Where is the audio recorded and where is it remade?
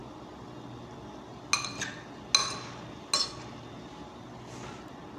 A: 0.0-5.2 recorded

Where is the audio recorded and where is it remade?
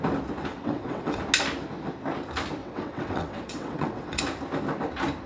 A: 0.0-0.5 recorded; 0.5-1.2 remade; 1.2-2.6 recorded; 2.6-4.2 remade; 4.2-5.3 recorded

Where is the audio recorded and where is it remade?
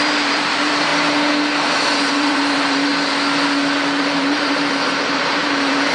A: 0.0-0.9 remade; 0.9-2.1 recorded; 2.1-2.9 remade; 2.9-4.0 recorded; 4.0-5.9 remade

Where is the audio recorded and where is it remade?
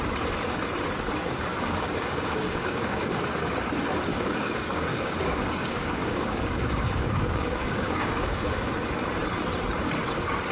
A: 0.0-1.5 recorded; 1.5-3.2 remade; 3.2-4.1 recorded; 4.1-8.7 remade; 8.7-10.5 recorded